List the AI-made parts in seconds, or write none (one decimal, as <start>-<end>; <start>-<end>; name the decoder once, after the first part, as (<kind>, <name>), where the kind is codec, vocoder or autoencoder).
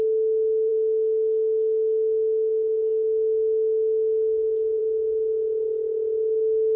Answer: none